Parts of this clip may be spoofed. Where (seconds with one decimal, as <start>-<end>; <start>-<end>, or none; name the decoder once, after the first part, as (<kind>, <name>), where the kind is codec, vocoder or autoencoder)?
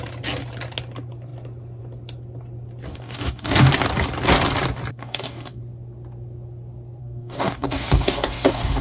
2.9-3.7 (codec, DAC); 4.9-5.6; 7.0-8.8